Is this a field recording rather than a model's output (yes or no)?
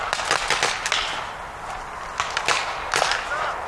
yes